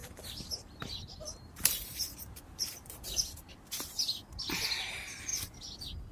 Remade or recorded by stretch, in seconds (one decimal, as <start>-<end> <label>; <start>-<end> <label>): 0.0-3.2 remade; 3.2-6.1 recorded